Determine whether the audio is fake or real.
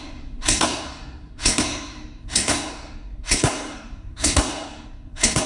fake